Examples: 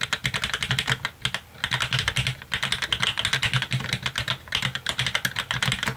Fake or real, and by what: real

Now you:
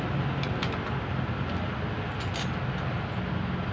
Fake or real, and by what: real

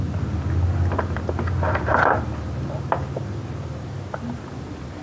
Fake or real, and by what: real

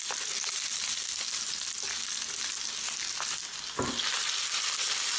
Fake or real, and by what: real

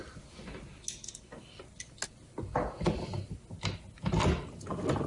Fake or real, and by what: real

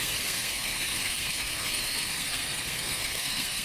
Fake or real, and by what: fake, codec, SNAC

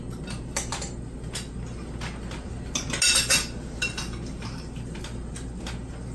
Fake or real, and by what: real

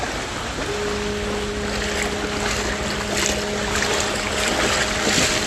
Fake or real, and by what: real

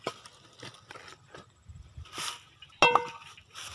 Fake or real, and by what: real